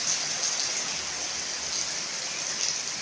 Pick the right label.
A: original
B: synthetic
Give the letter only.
A